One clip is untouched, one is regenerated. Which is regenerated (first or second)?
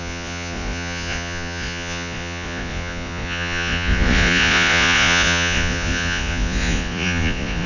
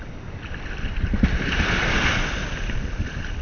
first